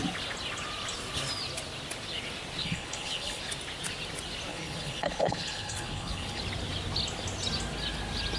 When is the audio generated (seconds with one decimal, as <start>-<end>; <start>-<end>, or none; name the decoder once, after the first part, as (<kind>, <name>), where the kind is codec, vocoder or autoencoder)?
2.6-3.4 (codec, HILCodec); 4.5-6.4